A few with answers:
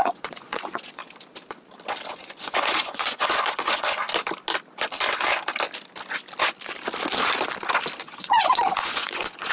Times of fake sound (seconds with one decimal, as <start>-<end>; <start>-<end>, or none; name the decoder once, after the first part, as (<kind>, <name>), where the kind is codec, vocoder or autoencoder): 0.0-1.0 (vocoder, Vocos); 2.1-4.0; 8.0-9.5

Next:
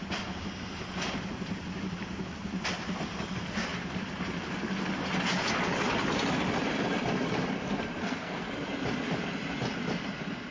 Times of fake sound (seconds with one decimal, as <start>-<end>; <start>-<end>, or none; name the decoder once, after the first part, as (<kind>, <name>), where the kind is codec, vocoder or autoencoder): 8.0-8.5 (codec, SNAC)

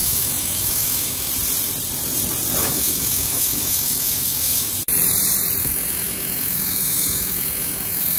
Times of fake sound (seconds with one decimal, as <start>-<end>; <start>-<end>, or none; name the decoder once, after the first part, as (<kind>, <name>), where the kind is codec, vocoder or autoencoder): 0.0-1.3 (autoencoder, DAC-VAE); 2.6-4.7; 5.6-8.2